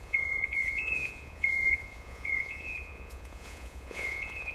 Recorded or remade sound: remade